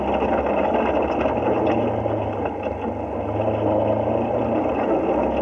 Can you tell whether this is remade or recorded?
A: recorded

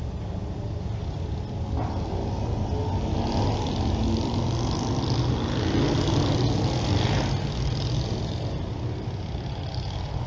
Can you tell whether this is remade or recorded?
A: recorded